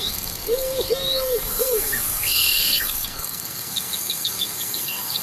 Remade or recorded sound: remade